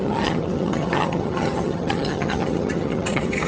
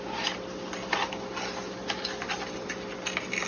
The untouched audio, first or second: second